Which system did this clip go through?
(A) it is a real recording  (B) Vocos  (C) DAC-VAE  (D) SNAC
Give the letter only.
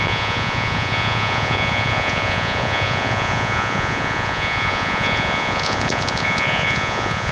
B